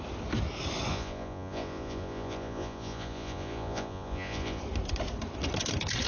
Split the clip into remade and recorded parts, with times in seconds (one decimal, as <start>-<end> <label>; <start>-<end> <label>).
0.0-0.9 recorded; 0.9-4.6 remade; 4.6-6.1 recorded